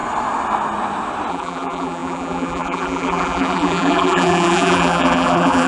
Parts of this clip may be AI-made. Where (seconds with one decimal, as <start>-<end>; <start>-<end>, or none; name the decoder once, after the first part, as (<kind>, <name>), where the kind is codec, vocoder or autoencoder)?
1.3-5.7 (vocoder, BigVGAN v2)